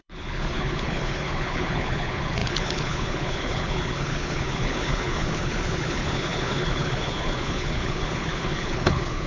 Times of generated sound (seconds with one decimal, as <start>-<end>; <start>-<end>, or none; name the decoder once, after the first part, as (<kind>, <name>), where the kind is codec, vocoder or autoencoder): 0.0-9.3 (codec, HILCodec)